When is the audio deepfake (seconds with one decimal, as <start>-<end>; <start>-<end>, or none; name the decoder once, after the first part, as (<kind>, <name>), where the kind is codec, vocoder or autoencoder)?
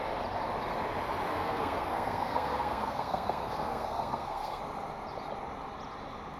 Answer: 1.3-4.6 (codec, SNAC)